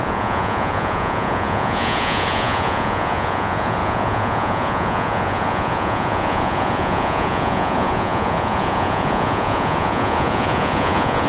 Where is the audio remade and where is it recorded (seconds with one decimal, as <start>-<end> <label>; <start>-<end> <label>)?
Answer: 0.0-11.3 remade